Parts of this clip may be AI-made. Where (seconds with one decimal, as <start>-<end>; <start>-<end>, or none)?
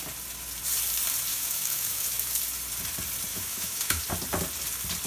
1.3-2.4; 3.3-4.0